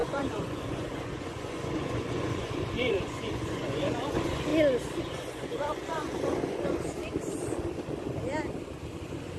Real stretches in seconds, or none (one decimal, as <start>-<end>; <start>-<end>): 4.5-5.0; 7.0-9.4